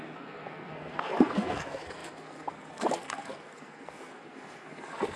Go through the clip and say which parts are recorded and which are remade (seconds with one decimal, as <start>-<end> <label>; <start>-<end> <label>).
0.0-5.2 remade